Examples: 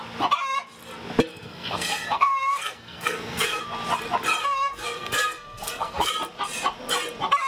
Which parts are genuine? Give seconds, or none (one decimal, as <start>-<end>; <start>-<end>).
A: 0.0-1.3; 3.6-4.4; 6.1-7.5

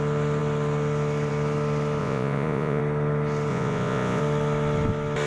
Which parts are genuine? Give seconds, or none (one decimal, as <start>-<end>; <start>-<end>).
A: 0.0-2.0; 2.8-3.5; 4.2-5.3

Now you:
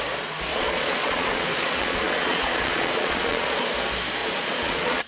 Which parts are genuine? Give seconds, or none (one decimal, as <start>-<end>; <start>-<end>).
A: 0.0-0.5; 3.6-4.2